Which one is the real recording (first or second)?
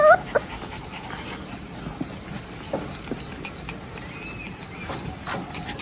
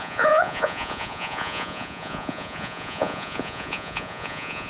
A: first